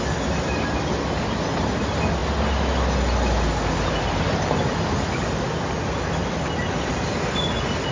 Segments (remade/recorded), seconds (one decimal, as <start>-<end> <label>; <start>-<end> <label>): 0.0-7.9 recorded